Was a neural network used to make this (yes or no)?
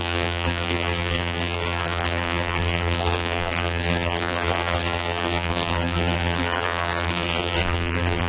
yes